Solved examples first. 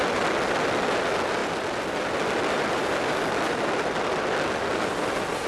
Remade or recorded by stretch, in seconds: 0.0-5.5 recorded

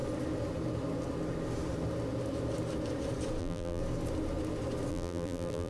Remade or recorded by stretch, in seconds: 0.0-3.4 recorded; 3.4-3.8 remade; 3.8-4.9 recorded; 4.9-5.7 remade

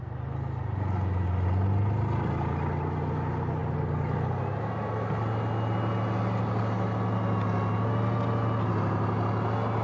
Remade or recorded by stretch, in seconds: 0.0-9.8 recorded

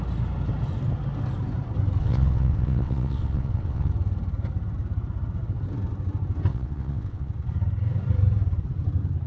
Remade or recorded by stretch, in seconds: 0.0-2.0 recorded; 2.0-3.9 remade; 3.9-6.5 recorded; 6.5-7.3 remade; 7.3-9.3 recorded

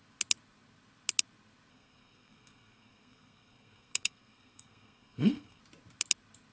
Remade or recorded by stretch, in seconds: 0.0-1.7 recorded; 1.7-5.6 remade; 5.6-6.5 recorded